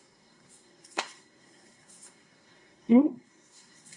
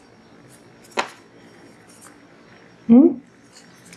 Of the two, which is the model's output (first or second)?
first